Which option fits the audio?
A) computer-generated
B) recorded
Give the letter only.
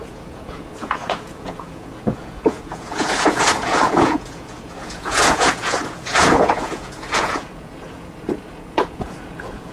A